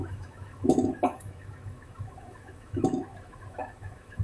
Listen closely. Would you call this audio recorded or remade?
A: remade